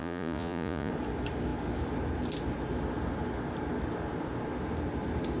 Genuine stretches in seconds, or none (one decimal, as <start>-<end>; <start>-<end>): 0.9-5.4